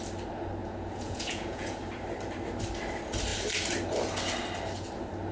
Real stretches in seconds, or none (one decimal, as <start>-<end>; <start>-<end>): 0.0-0.6; 1.8-5.3